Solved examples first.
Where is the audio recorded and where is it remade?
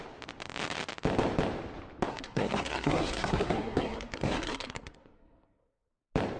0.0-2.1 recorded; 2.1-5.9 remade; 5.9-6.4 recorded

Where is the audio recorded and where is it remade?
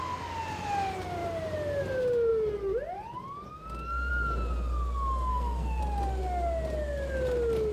0.0-5.3 recorded; 5.3-5.8 remade; 5.8-7.7 recorded